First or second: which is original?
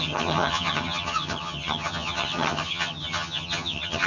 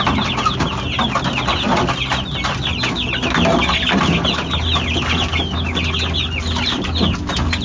second